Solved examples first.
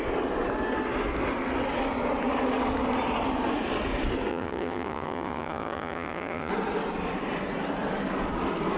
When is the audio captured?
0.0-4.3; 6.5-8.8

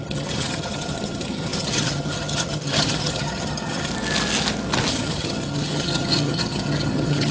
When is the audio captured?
3.9-4.9

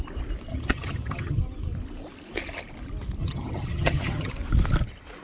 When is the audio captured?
0.0-0.5; 1.4-3.2; 4.3-5.2

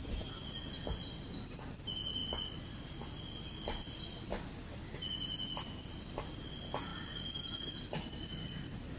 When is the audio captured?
0.0-9.0

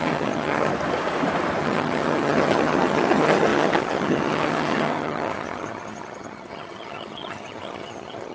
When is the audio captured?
0.7-1.6

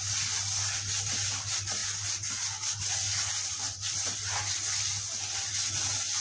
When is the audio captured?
0.0-6.2

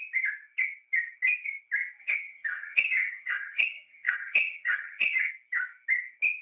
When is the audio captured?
0.0-2.0; 5.3-6.4

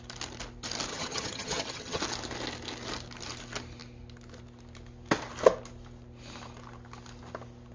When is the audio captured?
0.0-0.9; 2.0-7.7